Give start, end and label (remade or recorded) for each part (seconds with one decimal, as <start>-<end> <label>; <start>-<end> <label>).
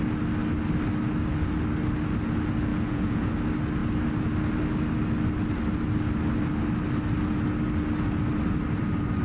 0.0-2.7 recorded; 2.7-3.3 remade; 3.3-9.2 recorded